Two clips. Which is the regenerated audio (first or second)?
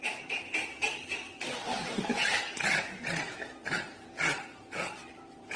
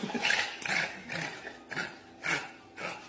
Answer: first